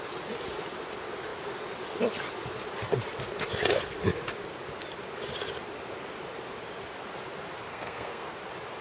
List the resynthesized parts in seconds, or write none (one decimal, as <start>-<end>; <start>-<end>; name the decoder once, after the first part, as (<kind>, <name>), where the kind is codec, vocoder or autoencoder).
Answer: 7.7-8.3 (codec, SNAC)